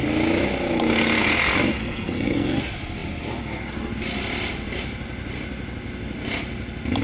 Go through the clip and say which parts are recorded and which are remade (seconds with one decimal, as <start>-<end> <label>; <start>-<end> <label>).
0.0-1.8 recorded; 1.8-2.6 remade; 2.6-7.0 recorded